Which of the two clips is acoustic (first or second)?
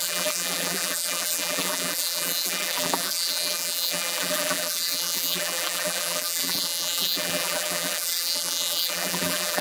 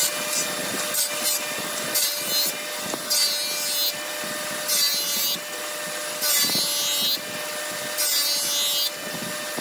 second